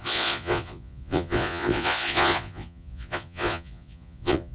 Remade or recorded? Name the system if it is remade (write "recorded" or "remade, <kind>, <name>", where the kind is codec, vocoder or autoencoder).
remade, vocoder, Vocos